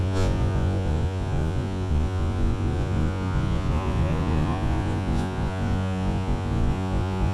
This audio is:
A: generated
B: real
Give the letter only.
A